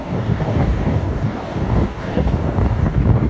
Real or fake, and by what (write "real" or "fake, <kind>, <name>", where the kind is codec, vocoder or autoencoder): fake, codec, DAC